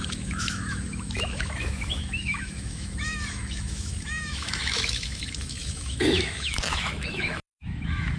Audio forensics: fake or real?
fake